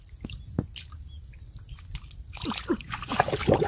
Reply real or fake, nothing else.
real